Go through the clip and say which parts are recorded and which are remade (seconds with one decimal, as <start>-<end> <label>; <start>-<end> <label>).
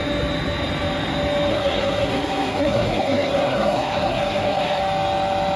0.0-1.5 recorded; 1.5-4.8 remade; 4.8-5.6 recorded